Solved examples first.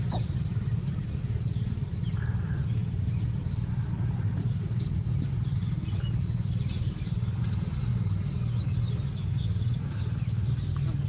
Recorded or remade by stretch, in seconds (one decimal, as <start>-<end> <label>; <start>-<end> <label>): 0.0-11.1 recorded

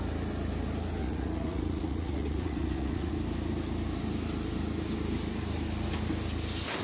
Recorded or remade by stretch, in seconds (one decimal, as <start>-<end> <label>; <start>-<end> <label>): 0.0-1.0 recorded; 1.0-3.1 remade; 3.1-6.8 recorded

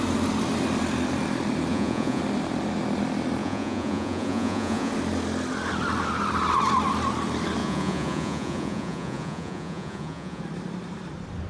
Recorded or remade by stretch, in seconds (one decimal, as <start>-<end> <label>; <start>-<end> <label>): 0.0-1.7 recorded; 1.7-2.2 remade; 2.2-3.4 recorded; 3.4-4.9 remade; 4.9-7.6 recorded; 7.6-10.4 remade; 10.4-11.5 recorded

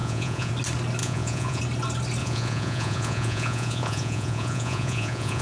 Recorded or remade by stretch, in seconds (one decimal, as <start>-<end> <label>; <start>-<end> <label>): 0.0-0.5 remade; 0.5-1.0 recorded; 1.0-1.6 remade; 1.6-2.2 recorded; 2.2-5.4 remade

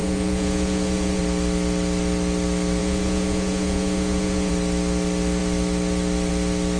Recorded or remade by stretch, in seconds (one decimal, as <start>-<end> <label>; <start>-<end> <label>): 0.0-1.2 remade; 1.2-2.8 recorded; 2.8-4.5 remade; 4.5-6.8 recorded

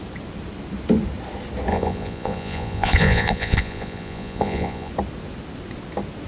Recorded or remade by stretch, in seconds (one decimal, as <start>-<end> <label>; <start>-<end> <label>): 0.0-1.7 recorded; 1.7-4.9 remade; 4.9-6.3 recorded

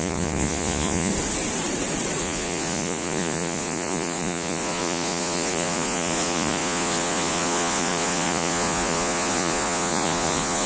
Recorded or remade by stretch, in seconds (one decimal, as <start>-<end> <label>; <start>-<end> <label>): 0.0-1.1 remade; 1.1-2.2 recorded; 2.2-10.7 remade